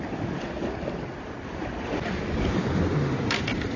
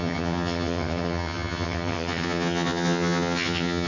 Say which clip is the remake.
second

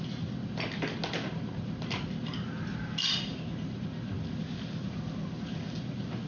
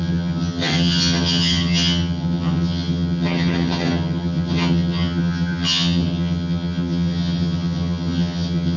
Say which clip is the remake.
second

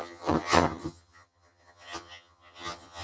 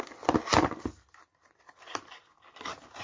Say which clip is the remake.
first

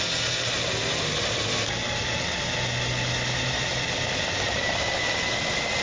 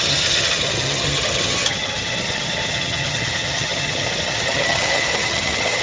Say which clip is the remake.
second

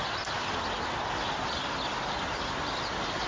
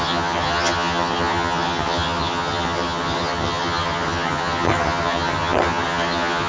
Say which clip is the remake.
second